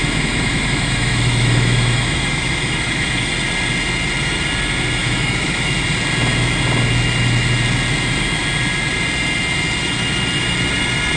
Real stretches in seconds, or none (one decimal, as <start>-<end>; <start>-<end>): 3.3-5.0; 5.7-11.2